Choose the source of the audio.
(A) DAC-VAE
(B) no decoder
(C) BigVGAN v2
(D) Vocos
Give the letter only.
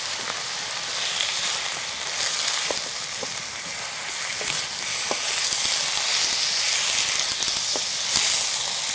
B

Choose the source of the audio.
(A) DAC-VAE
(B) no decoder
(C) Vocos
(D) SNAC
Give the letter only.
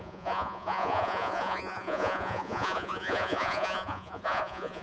C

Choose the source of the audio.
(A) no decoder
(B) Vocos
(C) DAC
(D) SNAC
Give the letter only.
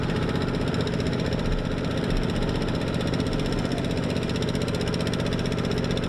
A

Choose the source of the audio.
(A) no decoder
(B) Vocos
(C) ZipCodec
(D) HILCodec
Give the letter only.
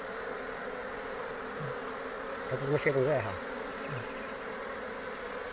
A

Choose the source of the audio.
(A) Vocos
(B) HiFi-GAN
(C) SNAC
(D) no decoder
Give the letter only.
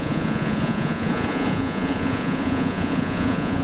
A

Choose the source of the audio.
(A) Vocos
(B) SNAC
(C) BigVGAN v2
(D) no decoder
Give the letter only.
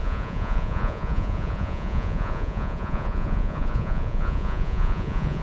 A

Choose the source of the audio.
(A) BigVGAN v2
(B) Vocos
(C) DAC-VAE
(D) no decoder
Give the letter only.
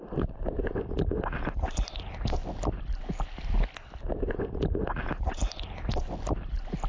D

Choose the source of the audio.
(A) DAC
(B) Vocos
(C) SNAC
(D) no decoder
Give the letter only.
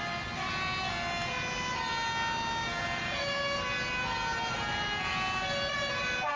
D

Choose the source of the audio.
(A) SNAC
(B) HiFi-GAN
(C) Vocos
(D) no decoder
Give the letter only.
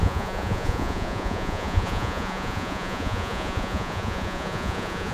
C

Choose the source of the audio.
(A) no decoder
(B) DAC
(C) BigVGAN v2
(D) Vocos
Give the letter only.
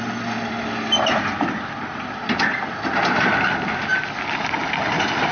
A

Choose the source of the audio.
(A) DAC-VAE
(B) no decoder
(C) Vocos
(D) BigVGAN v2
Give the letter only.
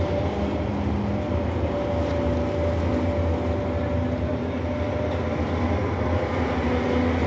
B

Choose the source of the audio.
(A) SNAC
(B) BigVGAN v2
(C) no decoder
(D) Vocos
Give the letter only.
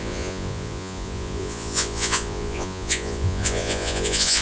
D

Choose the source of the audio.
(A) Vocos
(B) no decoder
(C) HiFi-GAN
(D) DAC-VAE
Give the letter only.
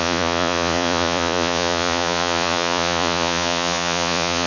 A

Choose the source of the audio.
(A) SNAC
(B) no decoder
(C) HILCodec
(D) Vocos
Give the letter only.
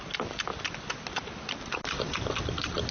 B